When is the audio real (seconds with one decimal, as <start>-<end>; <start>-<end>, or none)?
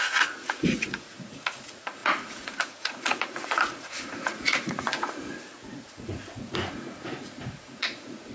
none